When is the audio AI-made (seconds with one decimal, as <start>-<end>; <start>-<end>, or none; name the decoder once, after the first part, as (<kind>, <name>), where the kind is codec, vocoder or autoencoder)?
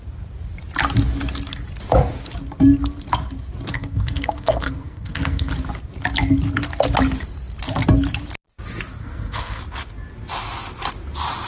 3.7-5.5 (codec, SNAC); 9.0-9.6